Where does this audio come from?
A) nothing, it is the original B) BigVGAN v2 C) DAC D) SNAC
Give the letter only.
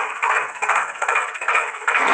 D